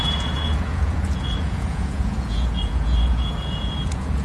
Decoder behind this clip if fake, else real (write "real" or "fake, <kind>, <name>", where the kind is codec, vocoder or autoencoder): fake, vocoder, Vocos